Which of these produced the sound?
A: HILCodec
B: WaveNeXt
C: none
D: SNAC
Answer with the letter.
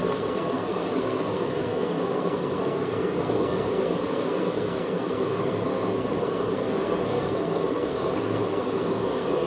D